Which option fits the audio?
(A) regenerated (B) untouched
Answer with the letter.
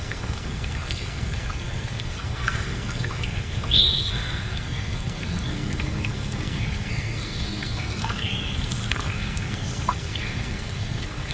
A